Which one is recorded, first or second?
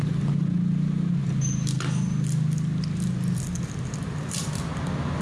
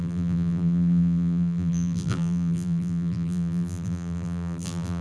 first